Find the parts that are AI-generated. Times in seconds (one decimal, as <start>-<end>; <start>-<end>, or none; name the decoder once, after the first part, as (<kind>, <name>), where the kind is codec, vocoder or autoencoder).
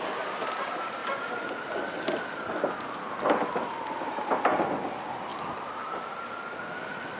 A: 5.3-6.1 (vocoder, BigVGAN v2)